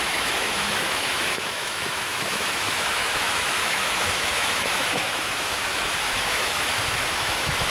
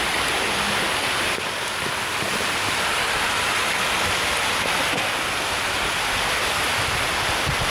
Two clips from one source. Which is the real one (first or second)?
second